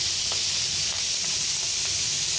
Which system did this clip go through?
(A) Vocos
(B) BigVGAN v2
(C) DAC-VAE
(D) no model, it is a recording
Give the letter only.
B